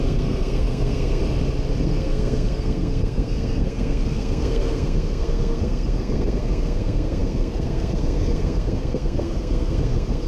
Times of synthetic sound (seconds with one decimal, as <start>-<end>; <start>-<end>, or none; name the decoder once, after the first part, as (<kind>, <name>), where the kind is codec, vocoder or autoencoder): 0.0-1.2 (codec, SNAC); 1.8-10.3